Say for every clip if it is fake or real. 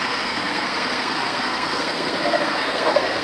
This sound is fake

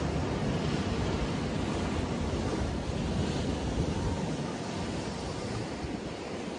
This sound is real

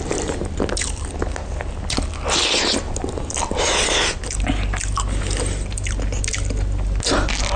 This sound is real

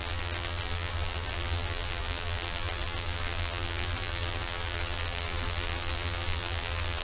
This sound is fake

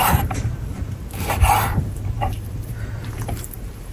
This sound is fake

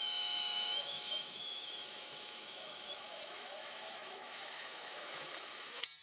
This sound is fake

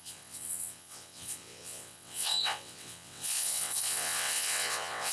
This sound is fake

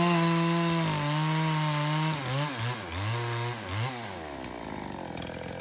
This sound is real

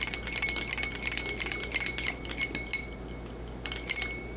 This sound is real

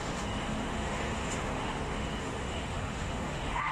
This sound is fake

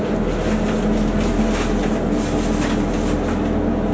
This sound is real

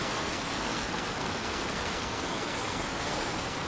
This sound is fake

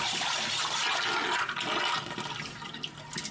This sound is real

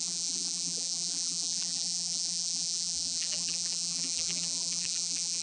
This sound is fake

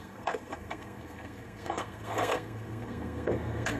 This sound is fake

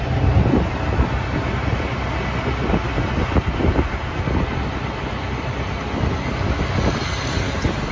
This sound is real